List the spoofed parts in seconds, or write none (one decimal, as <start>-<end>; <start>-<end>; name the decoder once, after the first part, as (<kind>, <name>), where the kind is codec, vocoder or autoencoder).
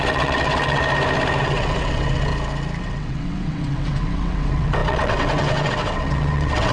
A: 0.0-0.8 (vocoder, WaveNeXt); 1.4-2.3; 2.8-6.7